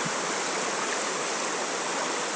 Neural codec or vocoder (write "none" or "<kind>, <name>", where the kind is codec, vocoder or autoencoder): none